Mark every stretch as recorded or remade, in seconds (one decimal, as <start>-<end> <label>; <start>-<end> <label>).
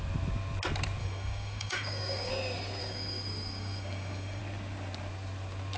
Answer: 0.0-1.0 recorded; 1.0-2.3 remade; 2.3-2.8 recorded; 2.8-4.4 remade; 4.4-5.8 recorded